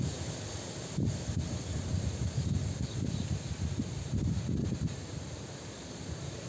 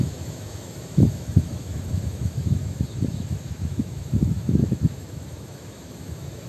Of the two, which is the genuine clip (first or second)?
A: first